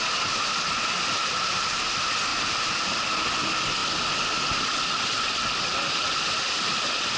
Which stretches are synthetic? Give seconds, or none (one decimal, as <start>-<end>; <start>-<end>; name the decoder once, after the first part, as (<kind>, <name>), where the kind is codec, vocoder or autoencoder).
2.3-2.9 (vocoder, BigVGAN v2)